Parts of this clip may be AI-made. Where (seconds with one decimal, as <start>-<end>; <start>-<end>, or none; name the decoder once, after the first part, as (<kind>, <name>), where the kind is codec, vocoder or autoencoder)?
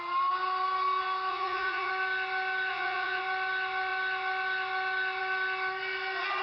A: 1.3-1.9 (vocoder, Vocos); 2.7-3.2